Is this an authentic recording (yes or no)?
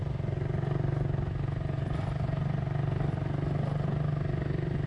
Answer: yes